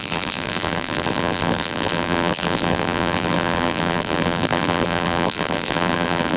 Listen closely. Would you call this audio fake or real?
fake